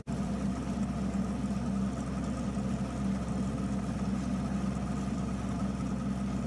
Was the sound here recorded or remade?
recorded